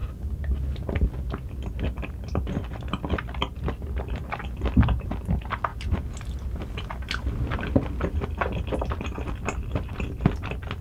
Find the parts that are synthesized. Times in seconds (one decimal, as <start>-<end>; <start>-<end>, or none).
none